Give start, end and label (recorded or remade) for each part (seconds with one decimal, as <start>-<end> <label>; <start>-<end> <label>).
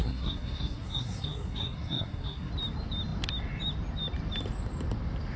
0.0-2.5 remade; 2.5-5.4 recorded